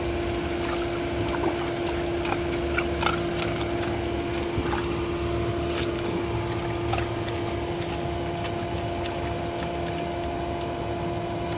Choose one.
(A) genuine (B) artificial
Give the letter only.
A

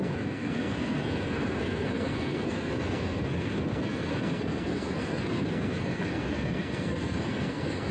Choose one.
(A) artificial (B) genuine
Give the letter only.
A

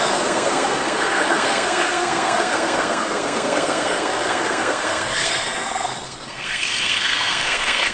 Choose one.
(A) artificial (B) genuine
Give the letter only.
A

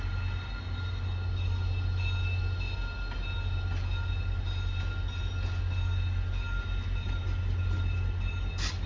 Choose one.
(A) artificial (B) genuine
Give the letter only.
B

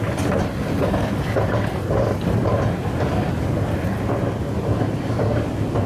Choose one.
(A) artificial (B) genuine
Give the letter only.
B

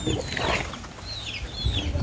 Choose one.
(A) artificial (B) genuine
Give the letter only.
B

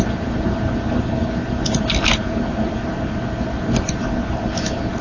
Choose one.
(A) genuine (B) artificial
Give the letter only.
A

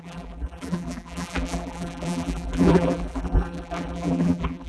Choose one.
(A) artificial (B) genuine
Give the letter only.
A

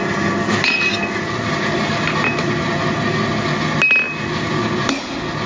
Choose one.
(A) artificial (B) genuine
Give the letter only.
B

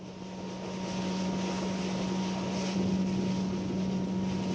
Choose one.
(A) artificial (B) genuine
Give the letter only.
B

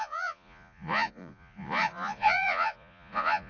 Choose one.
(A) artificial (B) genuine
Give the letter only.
A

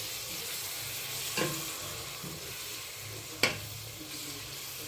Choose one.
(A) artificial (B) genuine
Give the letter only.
B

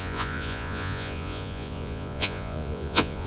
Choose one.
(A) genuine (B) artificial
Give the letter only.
B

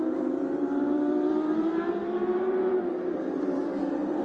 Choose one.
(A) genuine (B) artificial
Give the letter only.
B